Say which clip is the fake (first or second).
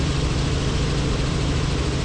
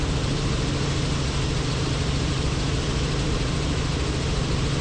second